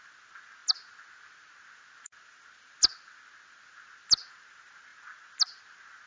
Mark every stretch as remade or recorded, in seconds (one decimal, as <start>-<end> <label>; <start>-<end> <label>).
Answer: 0.0-6.1 recorded